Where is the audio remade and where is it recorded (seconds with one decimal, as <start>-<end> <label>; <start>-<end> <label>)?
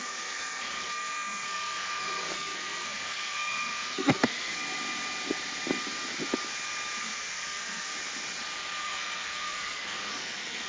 0.0-4.6 remade; 4.6-7.0 recorded; 7.0-7.9 remade; 7.9-8.8 recorded; 8.8-10.7 remade